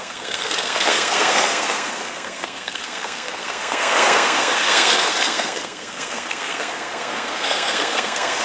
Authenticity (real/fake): fake